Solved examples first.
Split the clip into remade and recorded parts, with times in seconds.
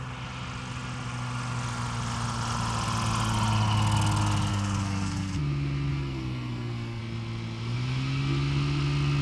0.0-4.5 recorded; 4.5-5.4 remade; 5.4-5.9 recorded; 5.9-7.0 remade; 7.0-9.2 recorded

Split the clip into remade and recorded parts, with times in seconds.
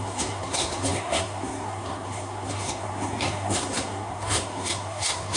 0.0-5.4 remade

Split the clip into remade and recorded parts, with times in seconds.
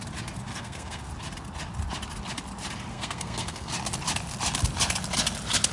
0.0-0.5 recorded; 0.5-1.0 remade; 1.0-2.9 recorded; 2.9-3.7 remade; 3.7-5.7 recorded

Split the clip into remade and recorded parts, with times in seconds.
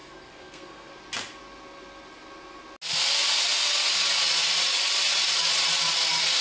0.0-0.9 remade; 0.9-6.4 recorded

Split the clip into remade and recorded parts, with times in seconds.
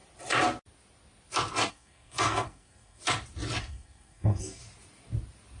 0.0-1.7 recorded; 1.7-3.0 remade; 3.0-3.6 recorded; 3.6-4.6 remade; 4.6-5.6 recorded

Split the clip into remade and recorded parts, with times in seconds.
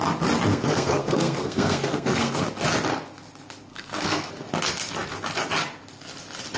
0.0-0.5 recorded; 0.5-2.4 remade; 2.4-3.7 recorded; 3.7-4.3 remade; 4.3-6.6 recorded